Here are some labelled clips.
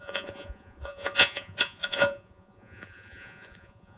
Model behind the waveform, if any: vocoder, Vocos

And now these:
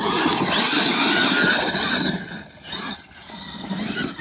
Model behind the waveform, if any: none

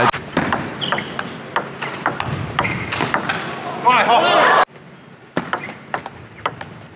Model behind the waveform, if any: none